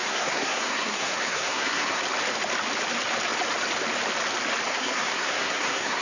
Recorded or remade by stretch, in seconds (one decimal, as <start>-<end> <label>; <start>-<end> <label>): 0.0-2.0 remade; 2.0-4.7 recorded; 4.7-6.0 remade